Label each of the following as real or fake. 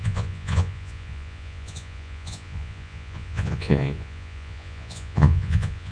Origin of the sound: fake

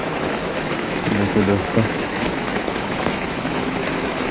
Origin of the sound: fake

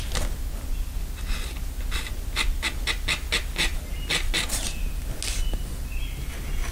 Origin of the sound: real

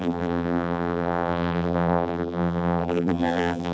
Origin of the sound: fake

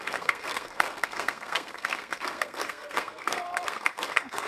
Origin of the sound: fake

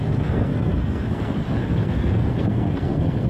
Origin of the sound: fake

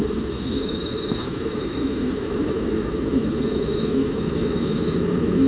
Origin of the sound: fake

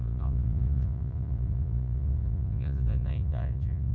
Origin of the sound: fake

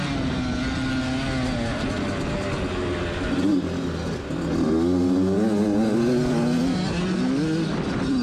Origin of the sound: real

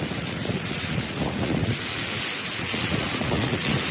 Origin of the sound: fake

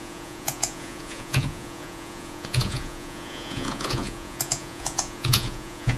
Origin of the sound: fake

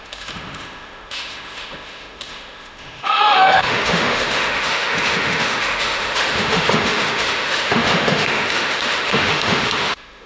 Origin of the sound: fake